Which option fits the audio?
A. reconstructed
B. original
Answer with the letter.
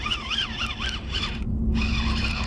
B